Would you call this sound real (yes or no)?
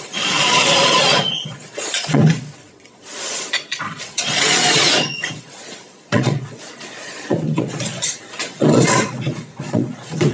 no